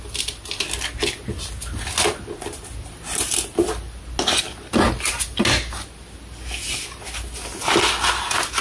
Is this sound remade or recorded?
recorded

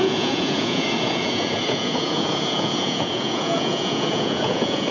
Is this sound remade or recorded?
remade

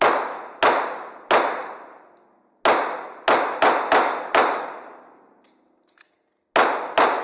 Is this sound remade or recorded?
recorded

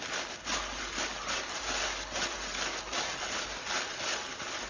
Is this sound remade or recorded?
recorded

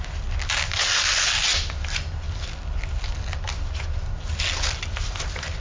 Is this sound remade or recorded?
recorded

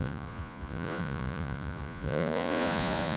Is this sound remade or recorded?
remade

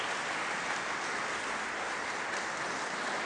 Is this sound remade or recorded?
recorded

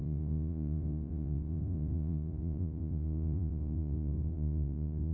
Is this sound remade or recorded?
remade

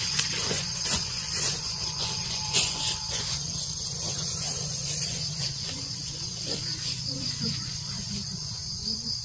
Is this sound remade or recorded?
remade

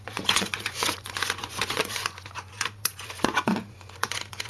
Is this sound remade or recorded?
remade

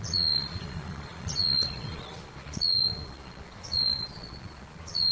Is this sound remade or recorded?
remade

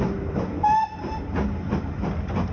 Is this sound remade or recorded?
recorded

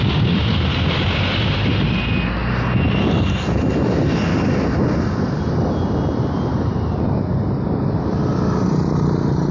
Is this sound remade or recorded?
recorded